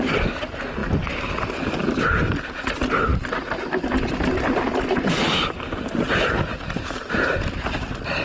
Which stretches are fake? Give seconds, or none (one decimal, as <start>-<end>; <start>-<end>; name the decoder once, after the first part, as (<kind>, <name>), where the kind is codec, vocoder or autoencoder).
none